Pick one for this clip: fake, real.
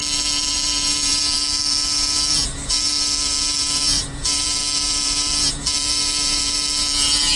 fake